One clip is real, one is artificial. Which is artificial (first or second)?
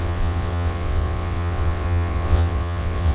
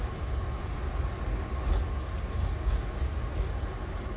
first